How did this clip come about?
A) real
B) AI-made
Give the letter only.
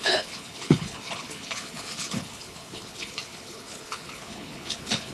B